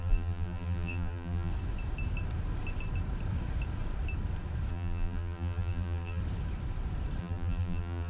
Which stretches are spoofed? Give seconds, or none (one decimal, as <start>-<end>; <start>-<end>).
0.0-1.5; 4.7-6.2; 7.2-8.1